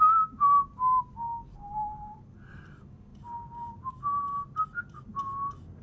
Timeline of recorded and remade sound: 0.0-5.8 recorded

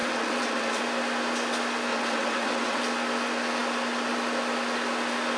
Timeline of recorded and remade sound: 0.0-0.8 remade; 0.8-1.9 recorded; 1.9-2.8 remade; 2.8-5.4 recorded